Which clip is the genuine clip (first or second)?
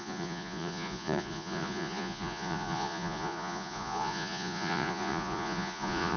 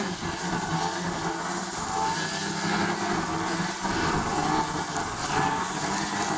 second